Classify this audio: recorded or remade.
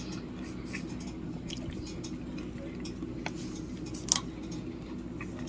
recorded